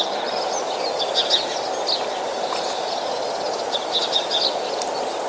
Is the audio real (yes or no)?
yes